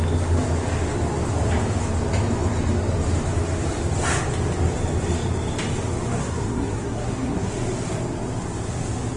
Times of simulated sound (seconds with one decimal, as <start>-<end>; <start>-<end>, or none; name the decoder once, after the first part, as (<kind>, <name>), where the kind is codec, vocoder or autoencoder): 6.2-7.5 (codec, SNAC)